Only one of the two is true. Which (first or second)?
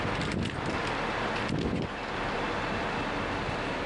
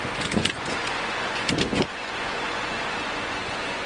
first